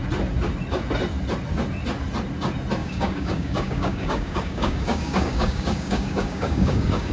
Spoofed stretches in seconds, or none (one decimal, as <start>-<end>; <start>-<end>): 2.8-7.1